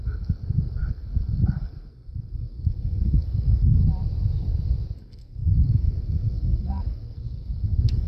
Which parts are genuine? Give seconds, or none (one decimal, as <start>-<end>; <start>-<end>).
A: 3.8-5.0